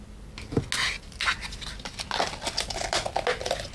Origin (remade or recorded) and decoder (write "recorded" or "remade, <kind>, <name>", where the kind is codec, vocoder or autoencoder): recorded